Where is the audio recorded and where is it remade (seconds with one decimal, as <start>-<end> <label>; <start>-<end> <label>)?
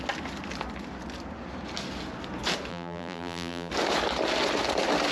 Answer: 0.0-2.7 recorded; 2.7-3.7 remade; 3.7-5.1 recorded